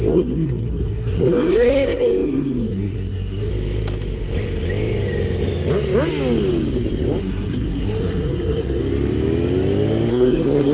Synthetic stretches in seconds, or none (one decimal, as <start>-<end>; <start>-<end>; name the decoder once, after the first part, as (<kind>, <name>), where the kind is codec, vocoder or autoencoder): 0.0-3.5 (codec, SNAC); 7.2-8.8; 10.1-10.7